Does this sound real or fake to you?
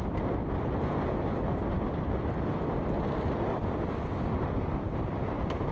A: real